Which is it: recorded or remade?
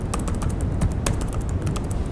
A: recorded